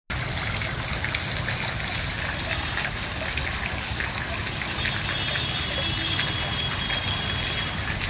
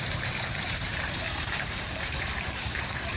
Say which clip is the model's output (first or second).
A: second